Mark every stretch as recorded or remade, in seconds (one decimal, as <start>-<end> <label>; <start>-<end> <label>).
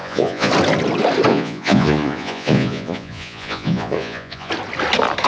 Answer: 0.0-0.5 remade; 0.5-1.3 recorded; 1.3-4.5 remade; 4.5-5.3 recorded